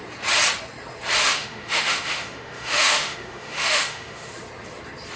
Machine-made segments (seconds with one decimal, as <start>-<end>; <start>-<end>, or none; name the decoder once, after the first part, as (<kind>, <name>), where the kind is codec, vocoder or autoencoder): 1.2-4.3 (autoencoder, DAC-VAE)